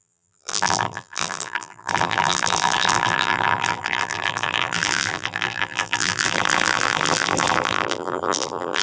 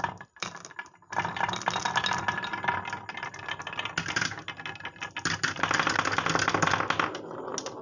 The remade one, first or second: first